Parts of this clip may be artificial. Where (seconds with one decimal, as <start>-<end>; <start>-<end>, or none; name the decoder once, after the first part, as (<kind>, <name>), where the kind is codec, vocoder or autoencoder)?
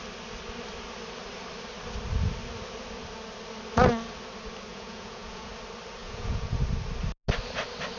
4.7-5.5 (vocoder, Vocos); 6.0-6.6